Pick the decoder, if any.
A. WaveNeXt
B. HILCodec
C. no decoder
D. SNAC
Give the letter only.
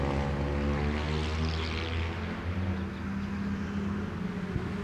C